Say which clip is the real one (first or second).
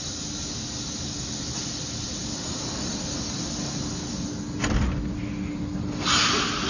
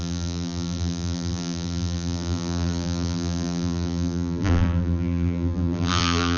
first